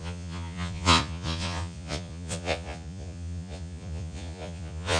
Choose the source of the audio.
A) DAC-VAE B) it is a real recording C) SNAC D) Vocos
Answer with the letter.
D